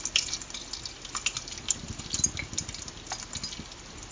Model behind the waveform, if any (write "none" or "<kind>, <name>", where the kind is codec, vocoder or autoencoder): none